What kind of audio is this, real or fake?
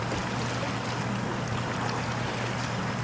real